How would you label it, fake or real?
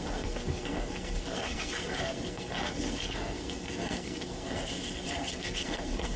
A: fake